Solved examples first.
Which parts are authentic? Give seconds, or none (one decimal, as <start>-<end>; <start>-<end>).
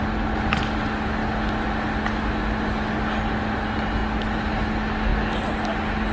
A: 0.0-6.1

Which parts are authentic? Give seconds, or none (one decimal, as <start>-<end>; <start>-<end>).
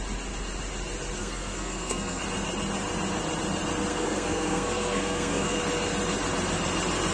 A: 0.0-1.2; 2.2-3.9; 5.6-7.1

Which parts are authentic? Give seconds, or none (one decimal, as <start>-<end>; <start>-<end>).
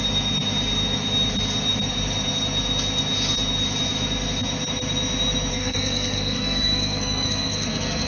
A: 0.0-5.5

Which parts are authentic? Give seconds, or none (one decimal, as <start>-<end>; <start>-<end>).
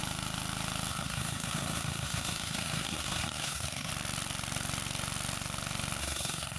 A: 0.0-0.9; 3.9-6.0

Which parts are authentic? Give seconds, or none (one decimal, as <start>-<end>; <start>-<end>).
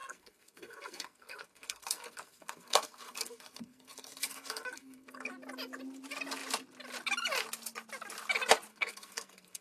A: 5.3-8.7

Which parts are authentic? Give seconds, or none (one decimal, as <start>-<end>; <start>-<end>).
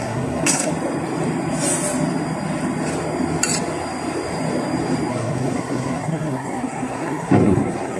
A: 0.7-5.1